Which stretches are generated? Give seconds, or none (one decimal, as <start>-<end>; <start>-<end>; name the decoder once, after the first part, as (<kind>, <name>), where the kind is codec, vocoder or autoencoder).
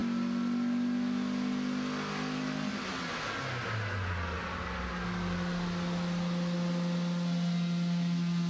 none